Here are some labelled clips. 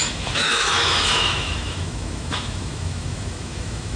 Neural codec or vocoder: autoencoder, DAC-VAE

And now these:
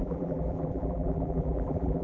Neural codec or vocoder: vocoder, BigVGAN v2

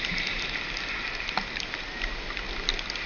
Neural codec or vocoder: none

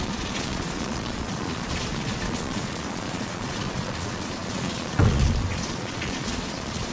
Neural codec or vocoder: vocoder, Vocos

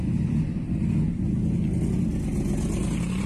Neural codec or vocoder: none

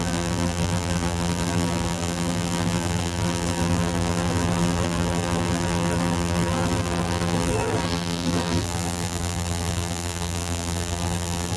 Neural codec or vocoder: vocoder, BigVGAN v2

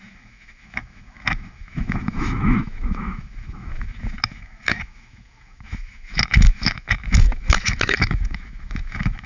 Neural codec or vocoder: autoencoder, DAC-VAE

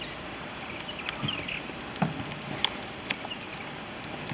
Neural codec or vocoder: none